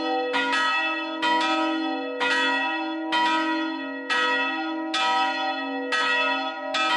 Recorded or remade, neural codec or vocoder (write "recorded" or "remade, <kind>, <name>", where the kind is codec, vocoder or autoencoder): recorded